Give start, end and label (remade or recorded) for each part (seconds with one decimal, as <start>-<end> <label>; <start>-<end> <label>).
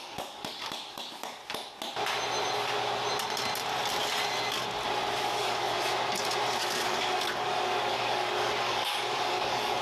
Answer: 0.0-1.4 remade; 1.4-5.2 recorded; 5.2-5.9 remade; 5.9-6.6 recorded; 6.6-9.8 remade